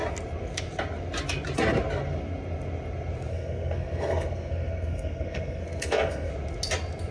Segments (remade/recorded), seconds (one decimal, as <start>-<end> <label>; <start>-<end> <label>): 0.0-3.3 recorded; 3.3-6.3 remade; 6.3-7.1 recorded